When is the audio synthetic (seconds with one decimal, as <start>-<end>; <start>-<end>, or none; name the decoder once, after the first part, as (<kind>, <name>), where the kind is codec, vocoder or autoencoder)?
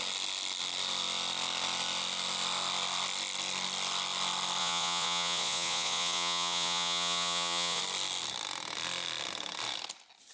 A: 4.6-7.8 (vocoder, Vocos)